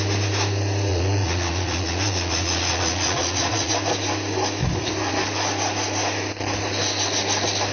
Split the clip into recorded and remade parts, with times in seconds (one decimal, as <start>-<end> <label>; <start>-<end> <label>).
0.0-0.9 recorded; 0.9-3.7 remade; 3.7-7.7 recorded